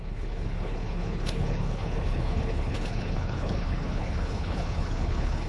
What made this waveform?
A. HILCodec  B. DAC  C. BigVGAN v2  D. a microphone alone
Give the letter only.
A